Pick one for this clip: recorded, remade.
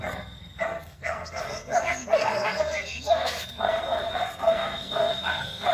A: remade